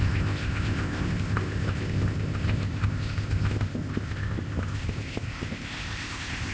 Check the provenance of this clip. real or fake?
fake